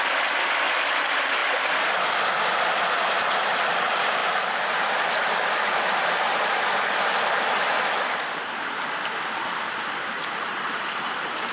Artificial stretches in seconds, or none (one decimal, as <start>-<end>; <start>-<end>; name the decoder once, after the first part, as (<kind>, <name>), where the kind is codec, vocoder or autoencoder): 4.2-5.1 (vocoder, BigVGAN v2)